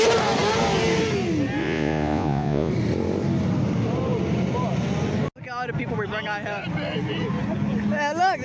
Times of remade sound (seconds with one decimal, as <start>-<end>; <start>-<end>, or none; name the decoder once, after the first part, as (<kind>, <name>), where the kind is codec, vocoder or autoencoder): 1.6-2.7 (vocoder, Vocos)